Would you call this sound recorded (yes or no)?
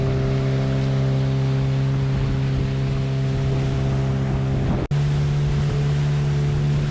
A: yes